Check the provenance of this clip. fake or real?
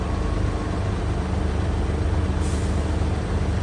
real